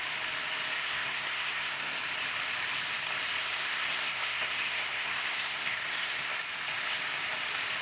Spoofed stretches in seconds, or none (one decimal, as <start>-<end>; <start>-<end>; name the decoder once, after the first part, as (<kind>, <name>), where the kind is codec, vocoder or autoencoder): 0.8-2.0 (codec, SNAC); 3.4-6.4